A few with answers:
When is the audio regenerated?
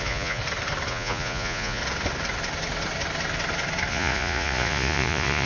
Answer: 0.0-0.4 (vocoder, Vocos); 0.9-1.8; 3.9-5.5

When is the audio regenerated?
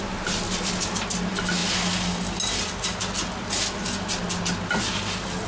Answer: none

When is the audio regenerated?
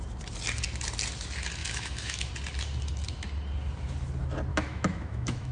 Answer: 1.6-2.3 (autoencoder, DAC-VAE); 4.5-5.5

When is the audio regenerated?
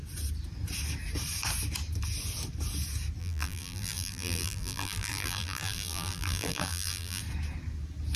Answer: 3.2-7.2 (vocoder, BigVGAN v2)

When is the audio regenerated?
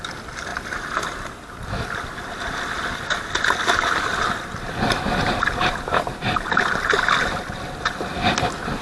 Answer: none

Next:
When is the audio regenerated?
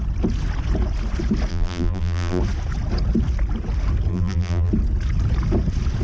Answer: 1.5-2.4 (vocoder, BigVGAN v2); 4.1-4.7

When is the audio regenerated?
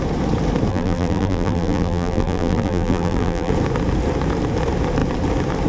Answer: 0.7-3.5 (vocoder, BigVGAN v2)